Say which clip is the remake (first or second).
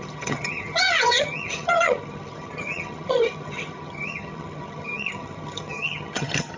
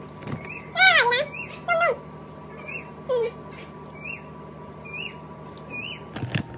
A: first